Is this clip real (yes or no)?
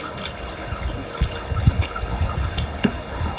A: no